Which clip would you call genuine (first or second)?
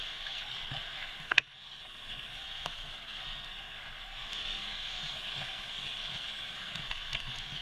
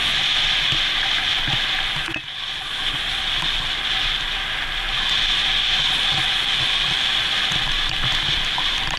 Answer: second